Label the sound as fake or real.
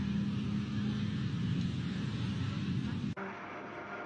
real